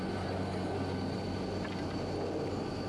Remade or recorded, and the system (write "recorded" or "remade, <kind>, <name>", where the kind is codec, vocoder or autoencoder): recorded